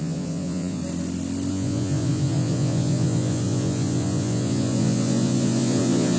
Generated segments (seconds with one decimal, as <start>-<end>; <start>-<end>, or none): 0.0-0.8; 1.5-6.2